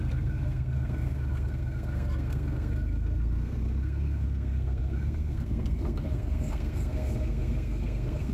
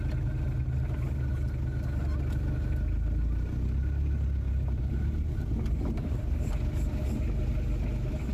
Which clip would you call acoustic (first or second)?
second